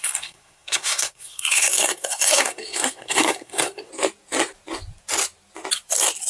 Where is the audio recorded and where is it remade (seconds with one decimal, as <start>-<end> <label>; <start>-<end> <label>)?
0.0-3.9 remade; 3.9-6.3 recorded